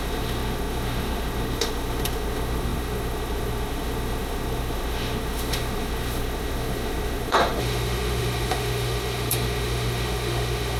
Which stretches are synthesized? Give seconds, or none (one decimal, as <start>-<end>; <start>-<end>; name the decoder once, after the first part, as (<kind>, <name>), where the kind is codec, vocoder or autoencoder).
0.0-10.8 (autoencoder, DAC-VAE)